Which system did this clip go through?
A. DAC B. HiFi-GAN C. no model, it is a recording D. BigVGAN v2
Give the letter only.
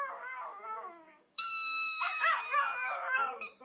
A